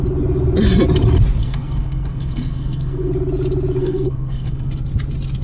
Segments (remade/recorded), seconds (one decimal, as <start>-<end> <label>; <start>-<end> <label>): 0.0-1.4 recorded; 1.4-3.1 remade; 3.1-3.8 recorded; 3.8-4.7 remade; 4.7-5.4 recorded